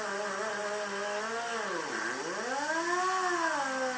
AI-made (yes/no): no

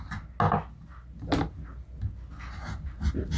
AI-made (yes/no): no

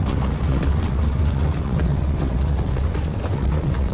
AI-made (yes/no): yes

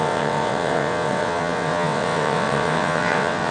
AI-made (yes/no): yes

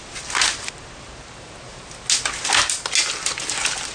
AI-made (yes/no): no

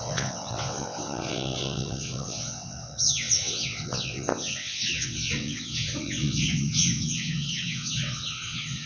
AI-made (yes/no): yes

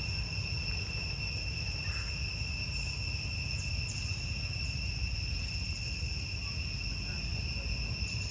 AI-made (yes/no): no